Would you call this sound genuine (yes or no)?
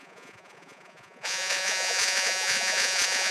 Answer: no